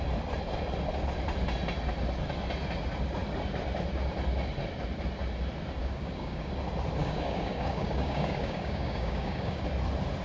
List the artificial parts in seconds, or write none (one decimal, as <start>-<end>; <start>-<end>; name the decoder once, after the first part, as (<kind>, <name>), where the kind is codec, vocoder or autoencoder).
5.8-6.5 (codec, DAC); 7.0-9.6